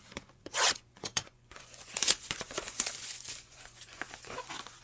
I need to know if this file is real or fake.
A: fake